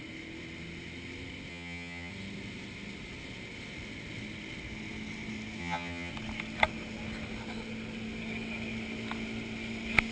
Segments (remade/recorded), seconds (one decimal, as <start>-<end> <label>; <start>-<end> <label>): 0.0-1.5 recorded; 1.5-2.1 remade; 2.1-5.6 recorded; 5.6-6.1 remade; 6.1-10.1 recorded